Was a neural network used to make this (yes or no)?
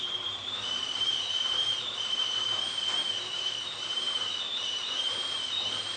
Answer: yes